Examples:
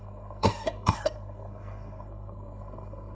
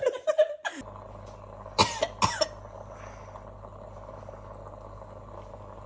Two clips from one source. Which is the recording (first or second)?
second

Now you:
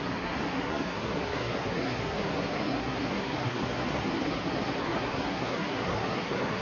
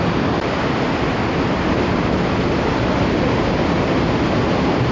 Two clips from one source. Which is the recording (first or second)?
second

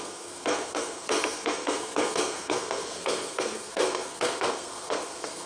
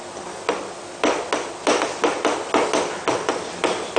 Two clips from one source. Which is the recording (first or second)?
second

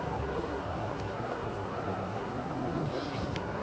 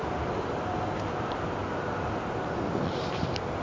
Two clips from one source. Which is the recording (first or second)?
second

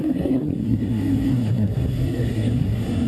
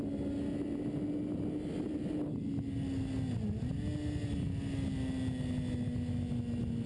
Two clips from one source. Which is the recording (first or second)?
second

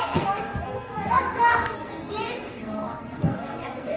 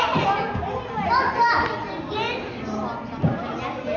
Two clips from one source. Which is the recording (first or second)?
second